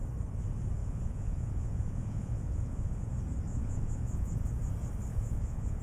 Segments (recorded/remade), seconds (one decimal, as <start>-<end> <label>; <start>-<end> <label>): 0.0-0.8 recorded; 0.8-3.1 remade; 3.1-3.5 recorded; 3.5-4.5 remade; 4.5-5.1 recorded; 5.1-5.8 remade